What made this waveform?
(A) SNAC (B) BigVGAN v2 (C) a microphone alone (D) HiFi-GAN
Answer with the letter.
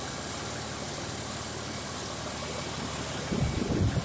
B